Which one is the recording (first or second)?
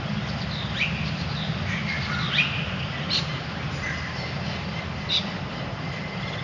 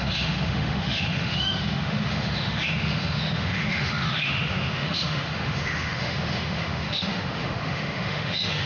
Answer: first